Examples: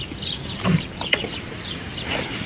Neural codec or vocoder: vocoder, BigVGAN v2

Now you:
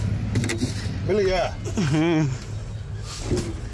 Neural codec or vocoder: none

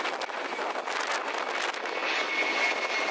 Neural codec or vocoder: none